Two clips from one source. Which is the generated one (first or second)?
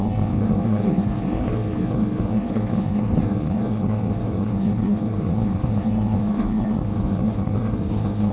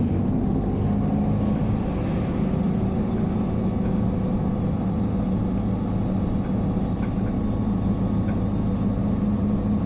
first